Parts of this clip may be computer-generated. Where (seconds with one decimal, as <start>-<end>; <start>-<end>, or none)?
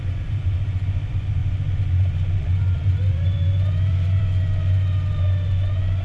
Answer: 0.0-6.0